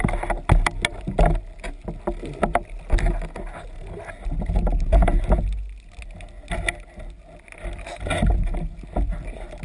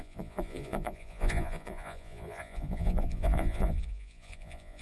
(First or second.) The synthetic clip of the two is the second